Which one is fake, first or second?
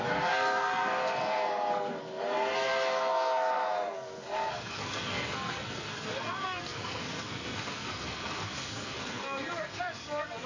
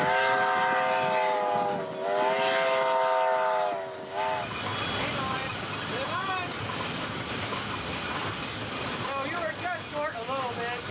first